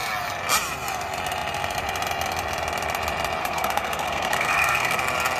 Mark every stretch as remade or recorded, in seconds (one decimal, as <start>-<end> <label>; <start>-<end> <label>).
0.0-3.4 recorded; 3.4-5.0 remade; 5.0-5.4 recorded